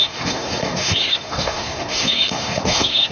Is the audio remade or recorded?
remade